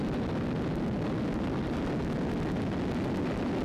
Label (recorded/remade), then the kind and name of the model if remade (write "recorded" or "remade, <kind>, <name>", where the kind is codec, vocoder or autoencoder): recorded